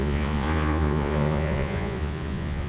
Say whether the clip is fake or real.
fake